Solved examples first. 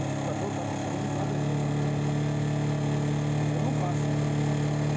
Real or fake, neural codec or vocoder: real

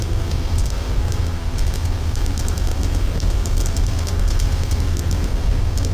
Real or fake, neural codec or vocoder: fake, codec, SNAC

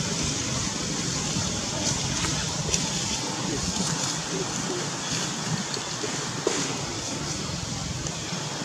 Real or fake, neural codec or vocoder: real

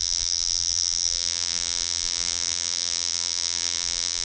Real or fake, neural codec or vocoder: fake, vocoder, BigVGAN v2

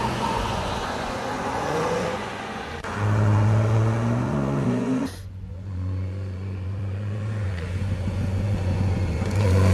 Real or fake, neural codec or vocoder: fake, vocoder, Vocos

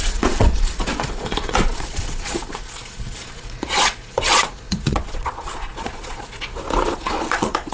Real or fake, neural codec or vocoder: fake, vocoder, Vocos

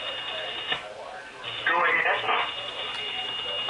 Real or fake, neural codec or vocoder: real